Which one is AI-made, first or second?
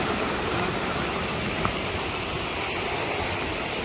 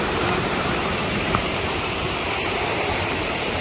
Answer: second